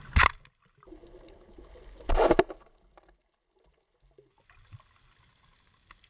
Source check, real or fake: real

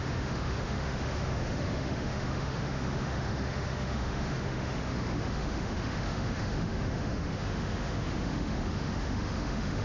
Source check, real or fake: fake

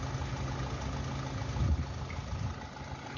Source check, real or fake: real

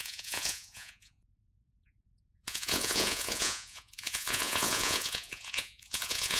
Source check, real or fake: fake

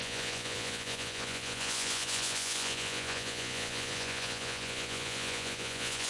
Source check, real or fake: fake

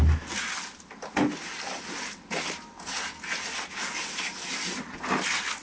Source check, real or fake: real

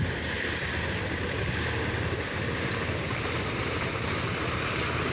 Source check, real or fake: real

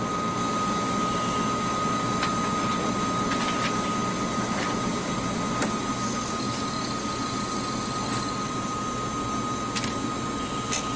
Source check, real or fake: real